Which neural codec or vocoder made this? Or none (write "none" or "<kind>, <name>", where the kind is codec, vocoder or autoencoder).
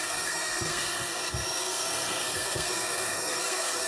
codec, SNAC